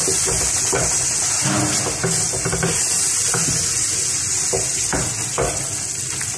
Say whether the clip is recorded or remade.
recorded